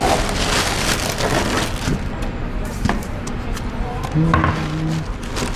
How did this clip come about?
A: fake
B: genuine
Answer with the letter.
B